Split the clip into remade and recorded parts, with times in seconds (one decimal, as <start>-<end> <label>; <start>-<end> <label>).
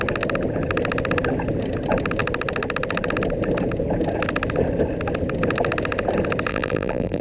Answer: 0.0-6.5 recorded; 6.5-7.2 remade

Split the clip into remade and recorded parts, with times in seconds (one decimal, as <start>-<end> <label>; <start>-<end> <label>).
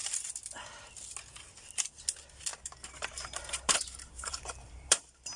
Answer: 0.0-0.9 remade; 0.9-2.5 recorded; 2.5-5.4 remade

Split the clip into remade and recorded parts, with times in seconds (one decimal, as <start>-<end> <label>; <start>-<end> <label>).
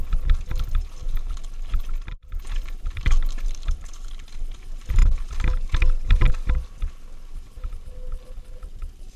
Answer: 0.0-9.2 recorded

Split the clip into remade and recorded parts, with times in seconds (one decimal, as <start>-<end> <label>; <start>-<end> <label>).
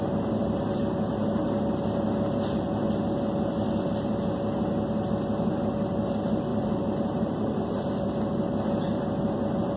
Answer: 0.0-6.5 recorded; 6.5-7.9 remade; 7.9-9.8 recorded